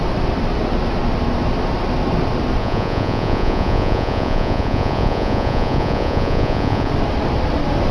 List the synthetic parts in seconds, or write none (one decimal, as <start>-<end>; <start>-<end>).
2.6-6.9